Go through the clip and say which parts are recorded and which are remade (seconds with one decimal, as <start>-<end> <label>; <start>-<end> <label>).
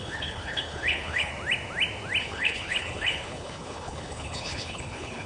0.0-1.3 remade; 1.3-2.2 recorded; 2.2-5.3 remade